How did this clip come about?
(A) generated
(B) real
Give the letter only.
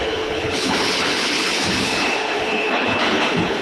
A